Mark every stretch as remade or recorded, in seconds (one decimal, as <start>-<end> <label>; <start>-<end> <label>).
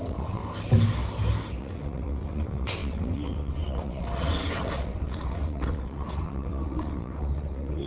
0.0-0.4 remade; 0.4-1.6 recorded; 1.6-7.9 remade